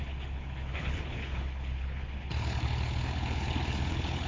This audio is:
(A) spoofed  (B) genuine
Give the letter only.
A